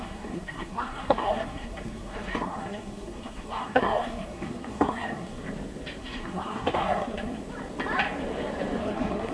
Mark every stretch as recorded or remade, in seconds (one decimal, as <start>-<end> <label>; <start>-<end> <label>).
0.0-5.4 remade; 5.4-6.0 recorded; 6.0-7.4 remade; 7.4-8.8 recorded; 8.8-9.3 remade